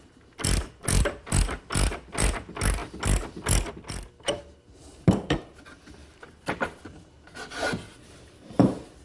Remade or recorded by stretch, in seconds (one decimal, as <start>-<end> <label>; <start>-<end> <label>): 0.0-4.8 recorded; 4.8-5.6 remade; 5.6-6.0 recorded; 6.0-6.8 remade; 6.8-9.0 recorded